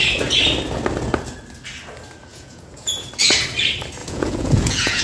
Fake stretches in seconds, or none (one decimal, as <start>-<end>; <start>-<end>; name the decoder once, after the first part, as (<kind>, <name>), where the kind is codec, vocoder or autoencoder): 2.3-3.1 (vocoder, Vocos); 4.0-5.0